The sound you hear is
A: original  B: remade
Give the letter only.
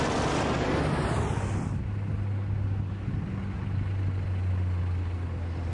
A